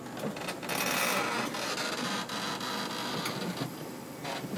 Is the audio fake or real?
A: real